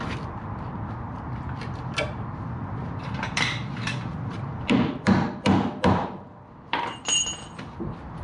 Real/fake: fake